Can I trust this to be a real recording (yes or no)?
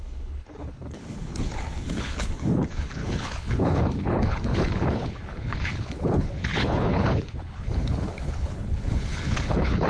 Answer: no